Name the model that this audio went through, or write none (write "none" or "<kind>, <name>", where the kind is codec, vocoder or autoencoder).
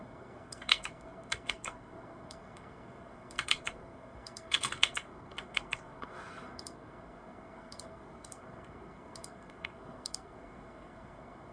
codec, SNAC